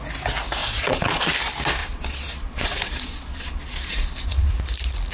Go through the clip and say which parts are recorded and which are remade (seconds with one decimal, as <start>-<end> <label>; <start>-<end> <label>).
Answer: 0.0-0.6 recorded; 0.6-1.3 remade; 1.3-1.8 recorded; 1.8-4.5 remade; 4.5-5.1 recorded